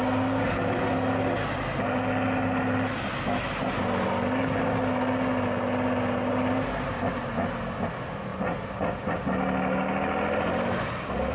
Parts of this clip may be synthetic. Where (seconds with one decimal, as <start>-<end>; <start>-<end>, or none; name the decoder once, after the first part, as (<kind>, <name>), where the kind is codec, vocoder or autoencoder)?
none